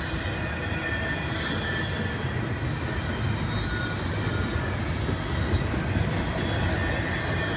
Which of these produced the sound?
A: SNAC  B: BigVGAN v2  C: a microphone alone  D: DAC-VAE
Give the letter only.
C